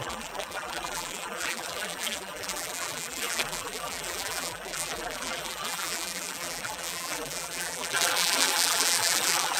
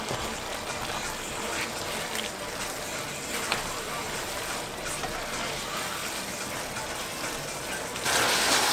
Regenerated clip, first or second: first